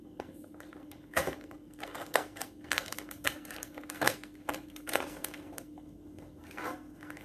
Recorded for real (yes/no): no